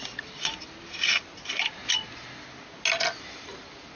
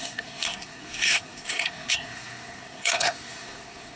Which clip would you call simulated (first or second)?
second